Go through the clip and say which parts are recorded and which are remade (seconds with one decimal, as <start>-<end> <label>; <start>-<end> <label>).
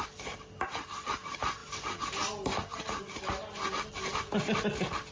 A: 0.0-5.1 recorded